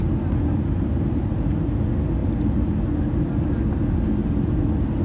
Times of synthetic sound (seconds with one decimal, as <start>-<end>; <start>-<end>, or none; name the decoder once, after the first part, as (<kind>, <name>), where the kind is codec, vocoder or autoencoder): none